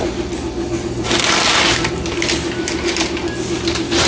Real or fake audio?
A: real